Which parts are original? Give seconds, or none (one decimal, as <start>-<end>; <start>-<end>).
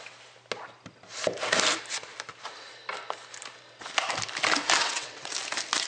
0.0-4.8; 5.3-5.9